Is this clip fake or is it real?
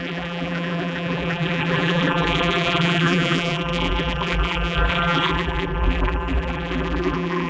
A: fake